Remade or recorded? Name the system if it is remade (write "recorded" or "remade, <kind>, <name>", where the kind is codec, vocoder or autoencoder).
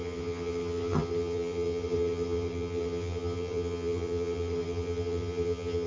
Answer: remade, vocoder, HiFi-GAN